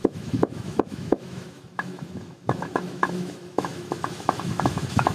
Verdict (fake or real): fake